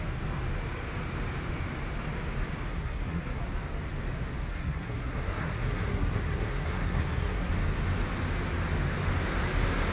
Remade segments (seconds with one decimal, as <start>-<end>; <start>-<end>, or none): 2.7-3.4; 4.5-7.5